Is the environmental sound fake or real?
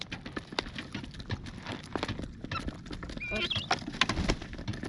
real